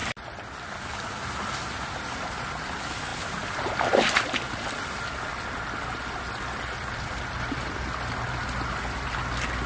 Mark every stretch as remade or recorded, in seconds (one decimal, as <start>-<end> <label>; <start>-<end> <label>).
0.0-9.7 recorded